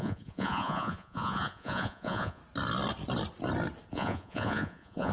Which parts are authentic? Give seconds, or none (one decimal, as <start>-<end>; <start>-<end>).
2.4-3.9